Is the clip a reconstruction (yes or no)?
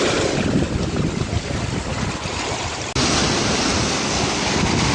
no